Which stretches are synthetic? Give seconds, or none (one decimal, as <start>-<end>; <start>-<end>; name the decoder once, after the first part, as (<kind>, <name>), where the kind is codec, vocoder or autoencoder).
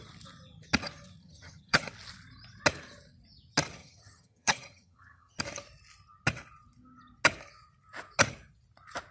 1.2-1.9 (vocoder, HiFi-GAN); 3.8-5.4